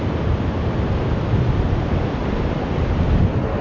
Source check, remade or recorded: recorded